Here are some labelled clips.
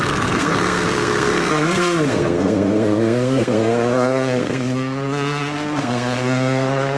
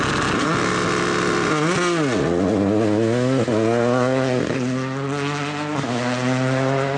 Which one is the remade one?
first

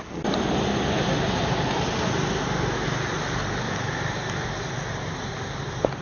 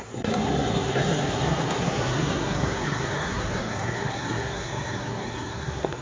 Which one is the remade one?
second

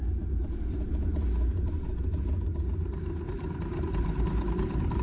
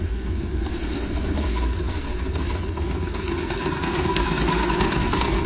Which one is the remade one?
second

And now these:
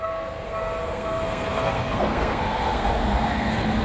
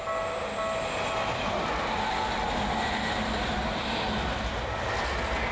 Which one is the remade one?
first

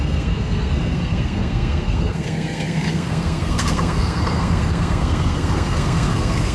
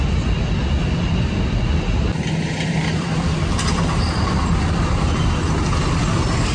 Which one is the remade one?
first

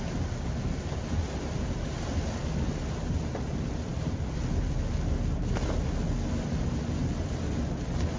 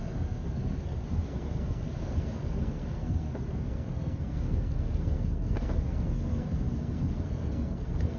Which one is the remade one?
second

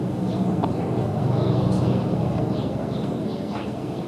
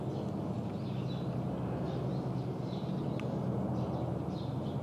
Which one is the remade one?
first